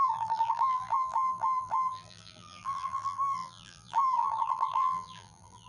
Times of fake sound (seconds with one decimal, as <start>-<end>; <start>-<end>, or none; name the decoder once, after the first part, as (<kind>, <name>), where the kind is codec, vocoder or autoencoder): 0.0-5.7 (vocoder, BigVGAN v2)

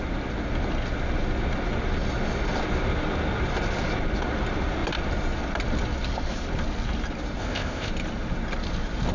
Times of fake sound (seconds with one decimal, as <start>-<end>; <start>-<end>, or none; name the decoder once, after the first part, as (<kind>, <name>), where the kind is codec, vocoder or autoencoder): 7.4-7.9 (codec, ZipCodec)

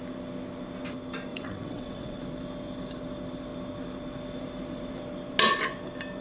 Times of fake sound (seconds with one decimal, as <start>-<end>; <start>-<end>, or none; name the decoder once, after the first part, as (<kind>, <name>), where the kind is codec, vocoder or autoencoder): 1.3-2.2 (vocoder, WaveNeXt)